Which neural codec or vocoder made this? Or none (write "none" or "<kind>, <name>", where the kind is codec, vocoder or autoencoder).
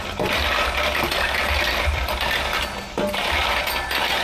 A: none